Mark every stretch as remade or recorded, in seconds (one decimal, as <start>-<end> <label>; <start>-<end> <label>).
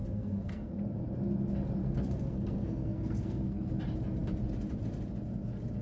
0.0-0.8 remade; 0.8-1.8 recorded; 1.8-3.7 remade; 3.7-5.8 recorded